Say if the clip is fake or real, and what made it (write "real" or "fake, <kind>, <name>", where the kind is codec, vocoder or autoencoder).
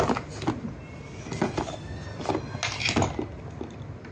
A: real